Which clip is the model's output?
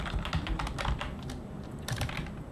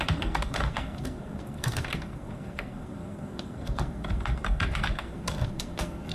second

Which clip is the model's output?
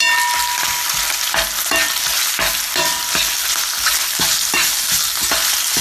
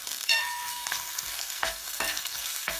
second